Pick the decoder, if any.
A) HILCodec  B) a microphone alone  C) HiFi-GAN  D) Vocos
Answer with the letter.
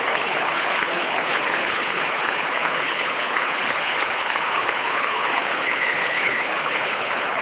A